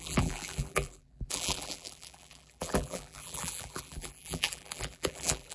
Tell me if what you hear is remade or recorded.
remade